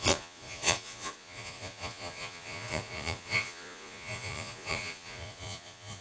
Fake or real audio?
fake